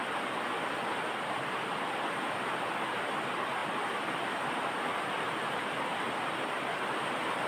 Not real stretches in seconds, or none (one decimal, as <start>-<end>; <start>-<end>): none